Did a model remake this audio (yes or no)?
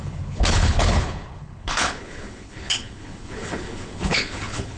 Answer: yes